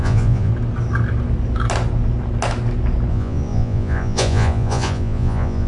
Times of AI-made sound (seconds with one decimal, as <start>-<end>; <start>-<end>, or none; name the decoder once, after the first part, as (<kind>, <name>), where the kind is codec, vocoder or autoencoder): 0.0-0.5 (vocoder, Vocos); 3.1-5.7